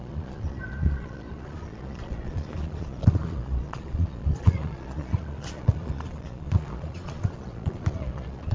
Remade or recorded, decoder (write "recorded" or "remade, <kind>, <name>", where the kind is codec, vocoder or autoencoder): remade, vocoder, Vocos